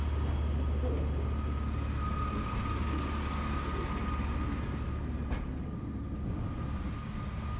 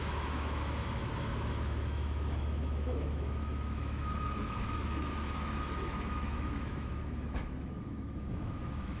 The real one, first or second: first